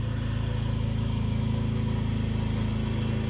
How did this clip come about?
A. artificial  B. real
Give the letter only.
B